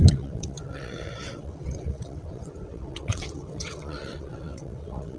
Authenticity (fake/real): fake